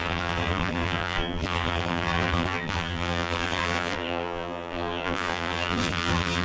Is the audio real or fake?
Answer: fake